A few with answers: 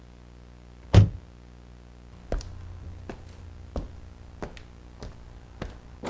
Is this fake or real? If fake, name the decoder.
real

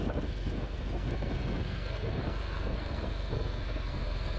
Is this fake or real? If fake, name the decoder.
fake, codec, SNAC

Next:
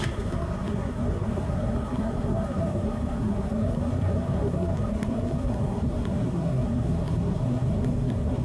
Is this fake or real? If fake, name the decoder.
fake, codec, SNAC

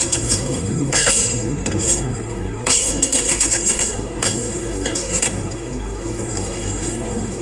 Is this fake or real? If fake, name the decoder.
fake, codec, SNAC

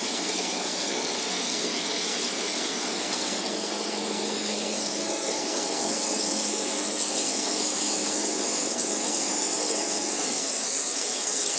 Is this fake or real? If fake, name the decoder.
fake, codec, SNAC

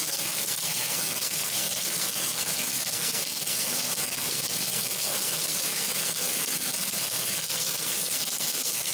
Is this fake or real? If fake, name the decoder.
fake, codec, SNAC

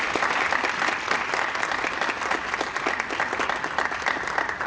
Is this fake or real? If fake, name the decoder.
real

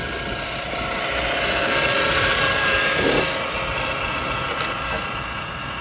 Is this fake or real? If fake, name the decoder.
real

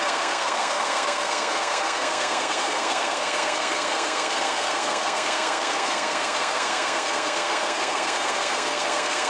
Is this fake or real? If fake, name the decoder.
fake, codec, SNAC